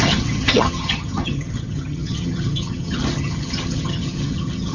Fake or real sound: fake